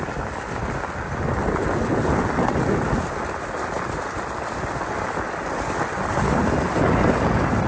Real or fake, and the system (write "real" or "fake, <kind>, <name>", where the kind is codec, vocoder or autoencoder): real